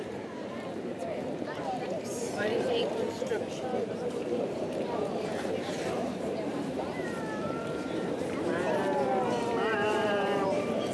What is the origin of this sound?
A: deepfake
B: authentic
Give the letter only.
A